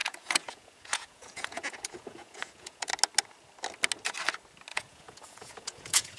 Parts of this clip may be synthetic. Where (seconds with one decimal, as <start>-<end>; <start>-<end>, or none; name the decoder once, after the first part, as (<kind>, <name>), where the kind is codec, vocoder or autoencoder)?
0.0-2.9 (vocoder, Vocos); 4.7-6.2